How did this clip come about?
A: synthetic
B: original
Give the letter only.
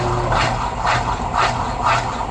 B